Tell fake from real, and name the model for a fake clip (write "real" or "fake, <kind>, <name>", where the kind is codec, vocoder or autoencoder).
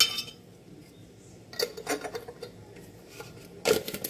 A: real